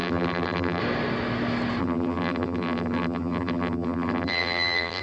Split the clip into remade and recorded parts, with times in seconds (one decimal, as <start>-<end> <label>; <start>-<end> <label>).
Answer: 0.0-0.8 remade; 0.8-1.8 recorded; 1.8-5.0 remade